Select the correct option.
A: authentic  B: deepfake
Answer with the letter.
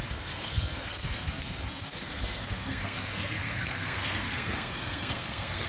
B